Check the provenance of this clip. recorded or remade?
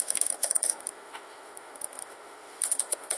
remade